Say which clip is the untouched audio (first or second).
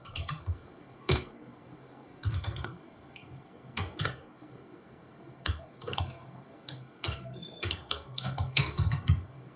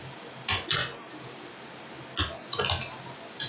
second